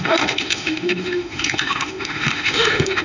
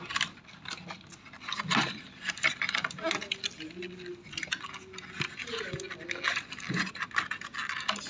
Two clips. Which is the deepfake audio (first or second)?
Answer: first